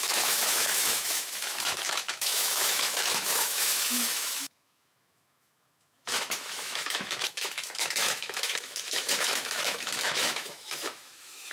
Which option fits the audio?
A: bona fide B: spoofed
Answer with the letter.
B